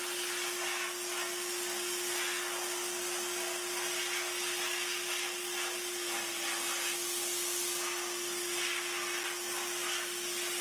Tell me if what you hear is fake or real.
real